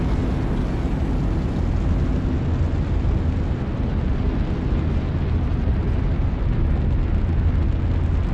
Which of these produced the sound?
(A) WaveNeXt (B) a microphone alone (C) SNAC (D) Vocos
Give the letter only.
B